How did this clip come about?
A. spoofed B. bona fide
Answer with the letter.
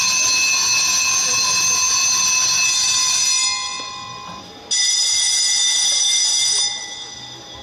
B